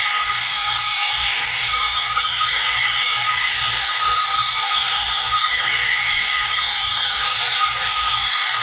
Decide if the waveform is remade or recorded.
remade